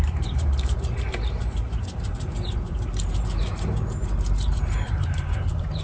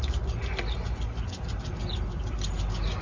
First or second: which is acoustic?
second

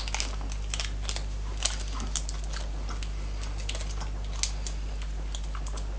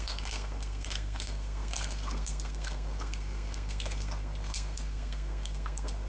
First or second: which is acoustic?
first